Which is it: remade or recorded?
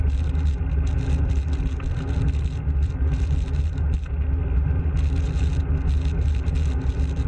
recorded